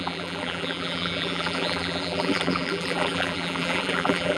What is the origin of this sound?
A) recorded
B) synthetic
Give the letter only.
B